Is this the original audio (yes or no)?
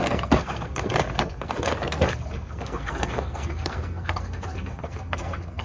no